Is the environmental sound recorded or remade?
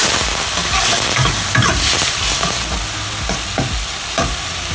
recorded